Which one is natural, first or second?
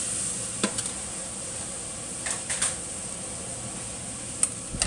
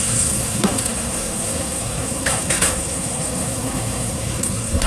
first